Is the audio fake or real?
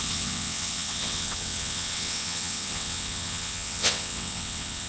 fake